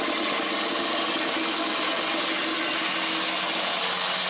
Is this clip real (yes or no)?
yes